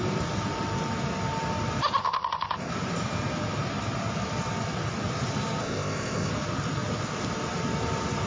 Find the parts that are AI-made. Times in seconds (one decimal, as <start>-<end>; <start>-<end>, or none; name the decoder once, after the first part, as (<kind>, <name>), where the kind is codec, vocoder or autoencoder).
2.0-2.7 (codec, ZipCodec); 5.6-6.3